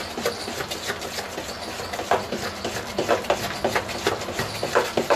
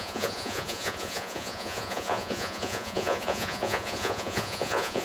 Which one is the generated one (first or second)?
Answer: second